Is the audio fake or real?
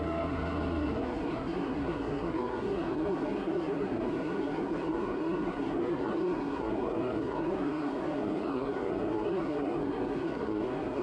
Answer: fake